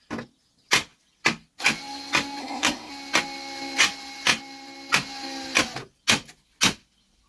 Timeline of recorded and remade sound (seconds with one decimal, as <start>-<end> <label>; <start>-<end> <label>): 0.0-2.4 recorded; 2.4-2.9 remade; 2.9-7.3 recorded